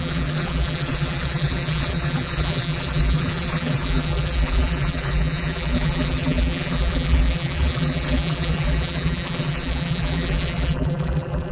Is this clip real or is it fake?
fake